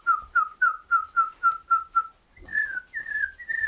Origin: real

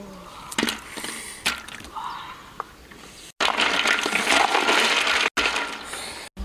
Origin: real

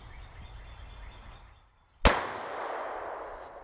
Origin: real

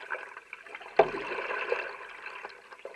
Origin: real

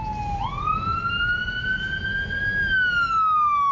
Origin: real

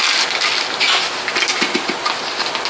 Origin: real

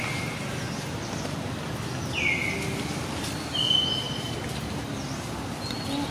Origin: real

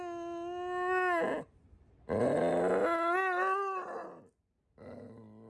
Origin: real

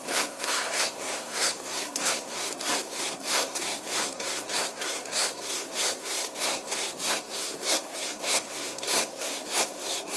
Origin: fake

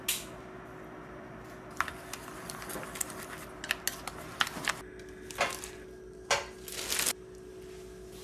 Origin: real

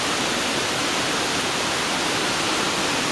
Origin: real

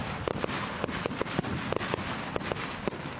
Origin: real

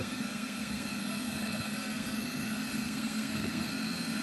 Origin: fake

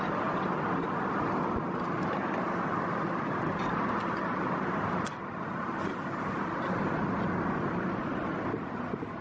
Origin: real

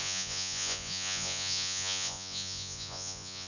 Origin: fake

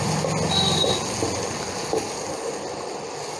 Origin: real